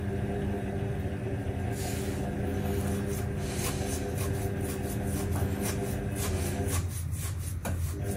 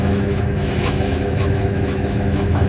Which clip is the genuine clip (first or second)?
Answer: first